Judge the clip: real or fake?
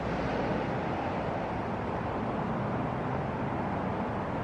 real